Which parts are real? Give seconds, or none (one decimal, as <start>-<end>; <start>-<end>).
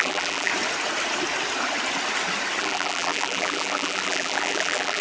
0.5-2.6